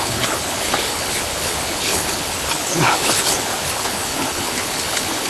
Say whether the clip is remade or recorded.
remade